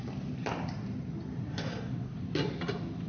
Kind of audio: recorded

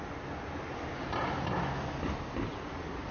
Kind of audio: recorded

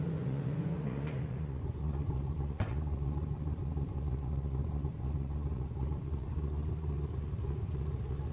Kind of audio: remade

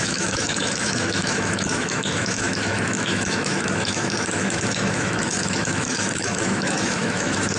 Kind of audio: remade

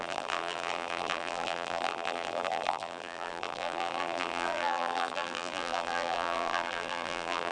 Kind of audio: remade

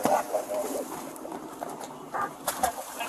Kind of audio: remade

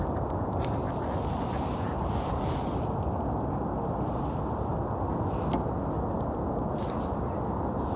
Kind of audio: recorded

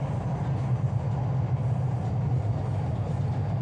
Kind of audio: recorded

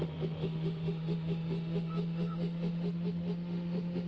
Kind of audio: remade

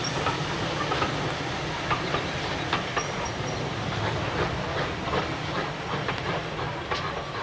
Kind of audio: recorded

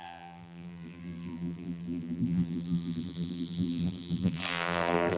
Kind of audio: remade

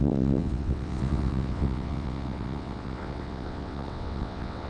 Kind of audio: remade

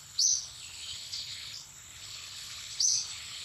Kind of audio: remade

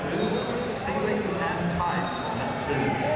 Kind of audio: remade